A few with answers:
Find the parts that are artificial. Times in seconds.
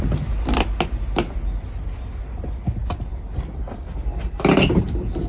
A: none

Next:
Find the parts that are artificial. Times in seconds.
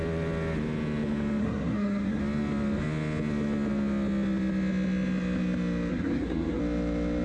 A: 1.4-2.2 (codec, SNAC); 5.9-6.6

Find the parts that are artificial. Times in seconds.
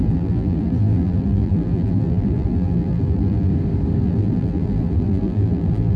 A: 0.0-3.5 (vocoder, BigVGAN v2); 4.0-6.0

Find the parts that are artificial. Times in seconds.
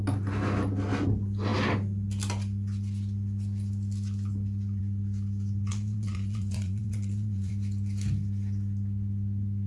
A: 5.7-7.5 (vocoder, Vocos)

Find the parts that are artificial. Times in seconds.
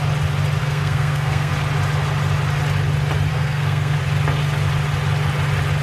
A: 0.6-1.5 (codec, SNAC); 3.3-4.0